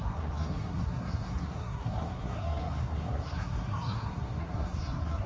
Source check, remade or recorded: remade